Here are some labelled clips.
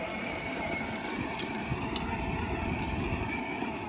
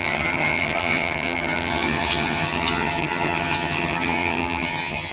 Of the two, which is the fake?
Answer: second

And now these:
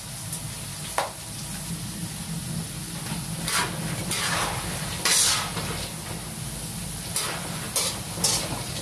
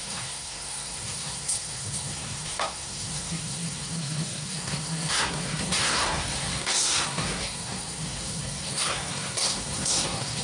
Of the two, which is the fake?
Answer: second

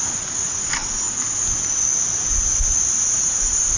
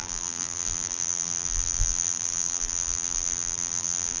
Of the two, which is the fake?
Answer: second